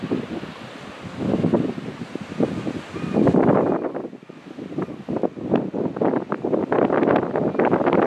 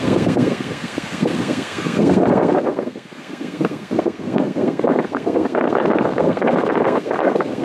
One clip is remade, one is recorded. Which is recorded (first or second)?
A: first